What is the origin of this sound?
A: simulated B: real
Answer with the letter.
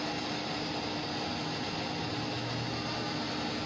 B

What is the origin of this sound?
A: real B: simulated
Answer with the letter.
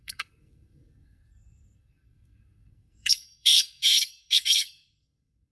B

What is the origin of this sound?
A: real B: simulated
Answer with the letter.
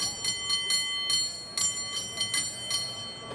A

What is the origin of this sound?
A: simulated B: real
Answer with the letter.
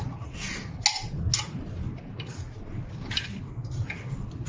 B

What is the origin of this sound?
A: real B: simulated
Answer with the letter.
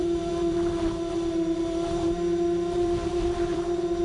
B